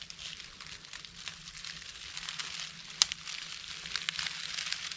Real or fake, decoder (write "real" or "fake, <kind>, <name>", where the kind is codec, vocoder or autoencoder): real